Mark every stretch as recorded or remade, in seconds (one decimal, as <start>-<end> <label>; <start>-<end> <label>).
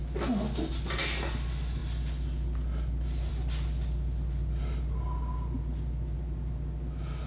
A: 0.0-7.3 recorded